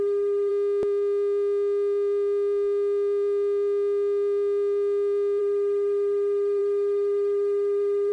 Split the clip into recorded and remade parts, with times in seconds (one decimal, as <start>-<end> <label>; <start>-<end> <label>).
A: 0.0-0.5 remade; 0.5-5.4 recorded; 5.4-8.1 remade